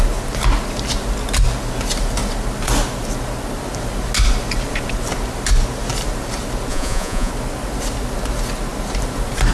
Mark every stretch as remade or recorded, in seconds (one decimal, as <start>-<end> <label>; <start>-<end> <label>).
0.0-6.7 recorded; 6.7-7.3 remade; 7.3-9.5 recorded